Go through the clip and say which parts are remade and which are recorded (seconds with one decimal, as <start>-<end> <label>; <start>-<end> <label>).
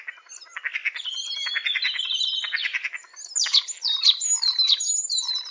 0.0-5.5 recorded